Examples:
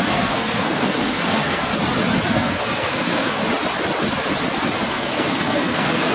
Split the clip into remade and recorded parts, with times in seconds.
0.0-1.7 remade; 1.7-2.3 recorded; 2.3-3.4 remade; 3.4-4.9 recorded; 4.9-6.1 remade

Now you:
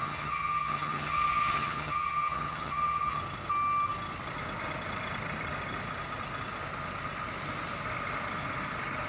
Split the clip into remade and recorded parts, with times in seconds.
0.0-3.2 remade; 3.2-9.1 recorded